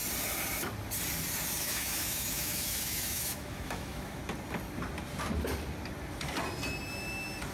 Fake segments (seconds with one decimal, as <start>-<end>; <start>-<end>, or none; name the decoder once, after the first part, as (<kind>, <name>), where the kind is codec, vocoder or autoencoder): 1.6-4.2 (autoencoder, DAC-VAE)